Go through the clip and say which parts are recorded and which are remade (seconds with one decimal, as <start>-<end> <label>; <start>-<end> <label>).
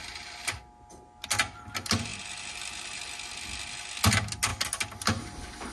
0.0-5.7 recorded